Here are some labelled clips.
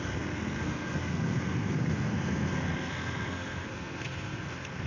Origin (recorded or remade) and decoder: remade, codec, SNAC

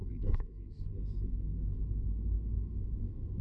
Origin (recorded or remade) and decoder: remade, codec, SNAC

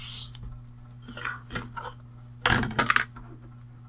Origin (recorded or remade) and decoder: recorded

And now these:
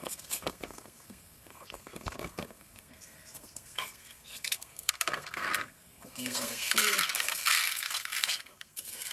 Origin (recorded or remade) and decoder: remade, codec, SNAC